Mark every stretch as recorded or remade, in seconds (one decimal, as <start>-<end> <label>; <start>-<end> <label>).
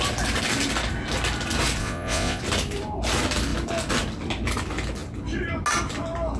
0.0-1.8 recorded; 1.8-2.4 remade; 2.4-6.4 recorded